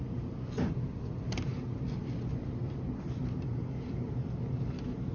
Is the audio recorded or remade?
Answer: recorded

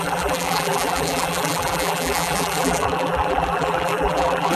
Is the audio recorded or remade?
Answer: remade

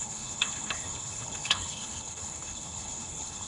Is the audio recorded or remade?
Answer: remade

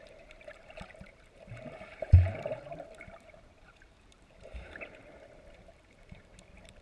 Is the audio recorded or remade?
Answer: remade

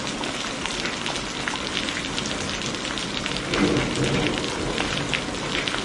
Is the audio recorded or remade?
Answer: recorded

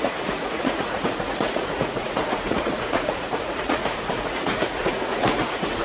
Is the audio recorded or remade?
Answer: remade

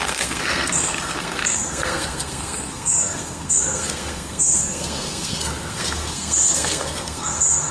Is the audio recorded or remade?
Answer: remade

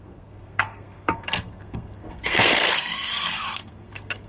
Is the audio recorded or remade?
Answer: remade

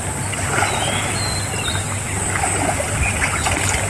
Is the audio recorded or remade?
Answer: recorded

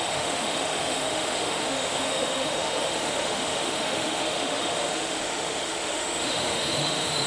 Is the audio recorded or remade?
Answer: remade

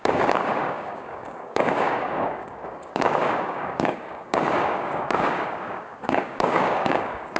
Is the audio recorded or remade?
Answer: remade